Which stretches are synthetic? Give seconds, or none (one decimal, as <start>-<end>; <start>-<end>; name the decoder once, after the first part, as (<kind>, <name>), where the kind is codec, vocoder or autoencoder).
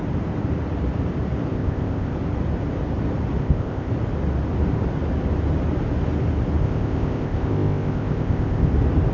1.5-2.1 (codec, ZipCodec); 3.4-3.9; 6.6-8.7